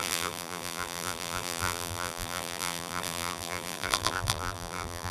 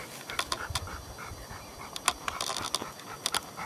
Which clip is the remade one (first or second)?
first